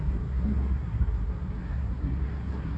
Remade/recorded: remade